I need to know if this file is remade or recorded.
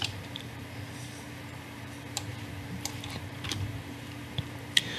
remade